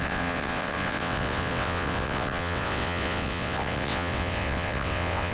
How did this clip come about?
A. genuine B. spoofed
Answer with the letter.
B